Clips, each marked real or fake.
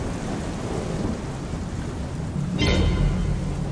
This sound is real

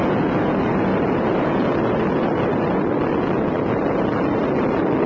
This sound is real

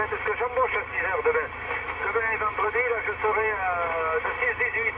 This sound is real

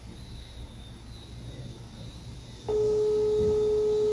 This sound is real